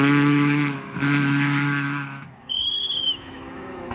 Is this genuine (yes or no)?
no